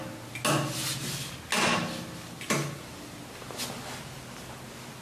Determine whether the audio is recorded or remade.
recorded